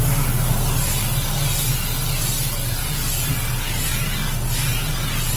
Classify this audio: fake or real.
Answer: real